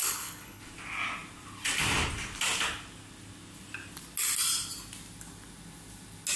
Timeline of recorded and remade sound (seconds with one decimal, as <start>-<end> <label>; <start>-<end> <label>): 0.0-0.6 remade; 0.6-6.4 recorded